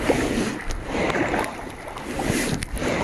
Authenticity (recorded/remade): recorded